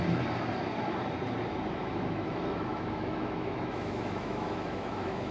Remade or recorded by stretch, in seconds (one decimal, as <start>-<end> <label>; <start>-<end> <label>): 0.0-1.7 recorded; 1.7-5.3 remade